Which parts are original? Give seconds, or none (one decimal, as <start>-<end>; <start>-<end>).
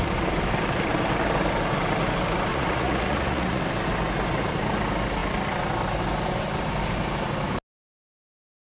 0.0-2.5; 3.6-8.8